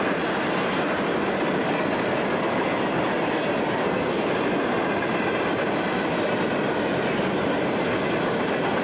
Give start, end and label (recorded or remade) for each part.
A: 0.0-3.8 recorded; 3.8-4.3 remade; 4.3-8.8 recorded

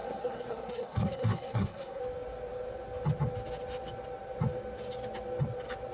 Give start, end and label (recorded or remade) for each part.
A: 0.0-2.0 remade; 2.0-5.9 recorded